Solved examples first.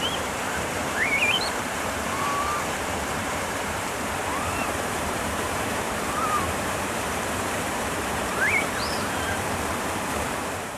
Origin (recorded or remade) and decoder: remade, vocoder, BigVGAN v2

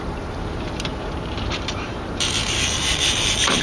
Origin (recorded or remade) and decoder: remade, vocoder, BigVGAN v2